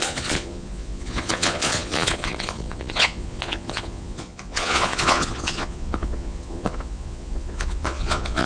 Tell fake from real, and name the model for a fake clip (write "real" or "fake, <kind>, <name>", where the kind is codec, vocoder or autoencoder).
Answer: fake, vocoder, Vocos